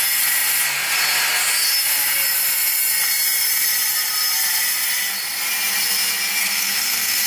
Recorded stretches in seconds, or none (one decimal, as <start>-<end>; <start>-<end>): 0.0-6.4